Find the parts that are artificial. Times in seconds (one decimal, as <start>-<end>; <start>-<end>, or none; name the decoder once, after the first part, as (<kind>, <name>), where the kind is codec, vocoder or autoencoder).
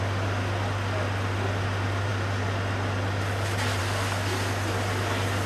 none